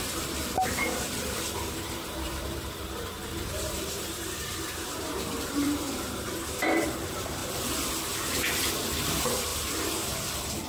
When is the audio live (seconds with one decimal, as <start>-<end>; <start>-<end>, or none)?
7.4-9.0; 9.5-10.2